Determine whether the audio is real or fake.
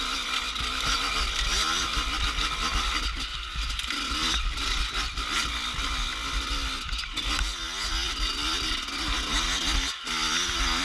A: real